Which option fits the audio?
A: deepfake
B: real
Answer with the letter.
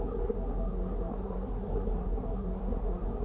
A